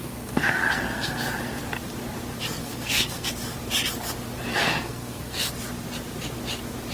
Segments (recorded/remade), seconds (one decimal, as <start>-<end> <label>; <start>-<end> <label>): 0.0-1.6 remade; 1.6-2.6 recorded; 2.6-3.3 remade; 3.3-4.5 recorded; 4.5-5.5 remade; 5.5-6.9 recorded